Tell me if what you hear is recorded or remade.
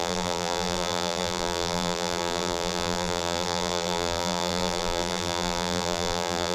remade